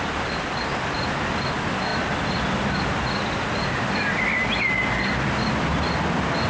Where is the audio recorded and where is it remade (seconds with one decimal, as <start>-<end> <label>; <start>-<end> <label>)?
0.0-6.5 recorded